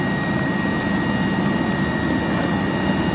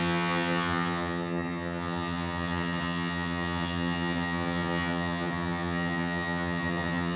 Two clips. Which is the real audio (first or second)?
first